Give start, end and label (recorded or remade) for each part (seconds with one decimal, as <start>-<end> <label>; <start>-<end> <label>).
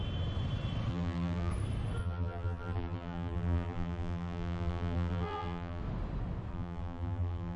0.0-0.9 recorded; 0.9-1.5 remade; 1.5-2.0 recorded; 2.0-5.8 remade; 5.8-6.5 recorded; 6.5-7.6 remade